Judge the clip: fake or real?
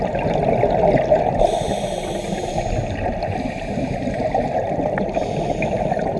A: real